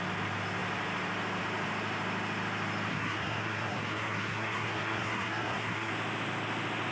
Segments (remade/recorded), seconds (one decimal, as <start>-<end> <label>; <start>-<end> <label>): 0.0-2.9 recorded; 2.9-5.9 remade; 5.9-6.9 recorded